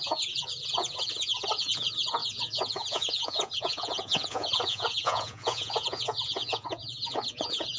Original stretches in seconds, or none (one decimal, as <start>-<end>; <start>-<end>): none